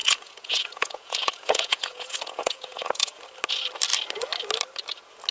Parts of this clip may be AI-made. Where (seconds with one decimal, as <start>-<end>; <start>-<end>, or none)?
0.0-3.2